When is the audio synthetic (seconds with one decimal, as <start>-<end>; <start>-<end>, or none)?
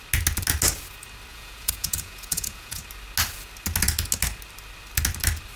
1.3-2.8